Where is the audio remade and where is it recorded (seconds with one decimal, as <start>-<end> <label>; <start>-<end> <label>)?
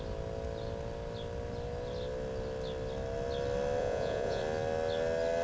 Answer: 0.0-3.8 recorded; 3.8-4.4 remade; 4.4-5.4 recorded